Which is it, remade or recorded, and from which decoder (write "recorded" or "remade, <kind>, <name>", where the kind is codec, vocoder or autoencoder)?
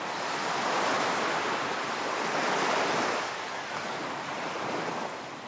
recorded